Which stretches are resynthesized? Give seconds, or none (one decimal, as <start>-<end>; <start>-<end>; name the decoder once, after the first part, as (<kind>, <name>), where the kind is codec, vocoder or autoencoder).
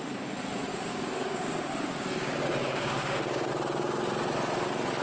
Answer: 0.7-3.5 (codec, DAC)